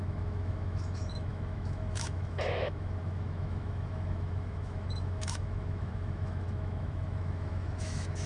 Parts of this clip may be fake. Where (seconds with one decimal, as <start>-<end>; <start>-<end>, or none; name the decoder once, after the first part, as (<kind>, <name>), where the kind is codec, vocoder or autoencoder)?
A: 0.0-8.3 (autoencoder, DAC-VAE)